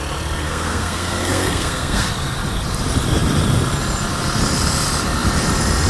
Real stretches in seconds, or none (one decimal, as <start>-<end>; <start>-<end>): 0.0-0.4; 2.1-5.9